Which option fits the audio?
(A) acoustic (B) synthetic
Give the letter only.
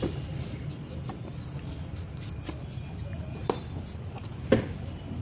A